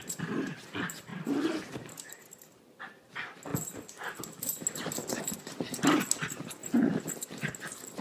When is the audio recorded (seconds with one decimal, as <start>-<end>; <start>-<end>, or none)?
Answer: 0.0-1.1; 2.8-8.0